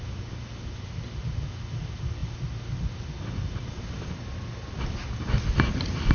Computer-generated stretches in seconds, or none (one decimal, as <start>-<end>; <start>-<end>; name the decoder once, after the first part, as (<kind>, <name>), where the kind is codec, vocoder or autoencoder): none